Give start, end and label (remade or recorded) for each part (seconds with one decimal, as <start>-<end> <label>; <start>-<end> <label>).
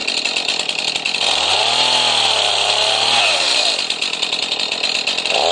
0.0-5.5 recorded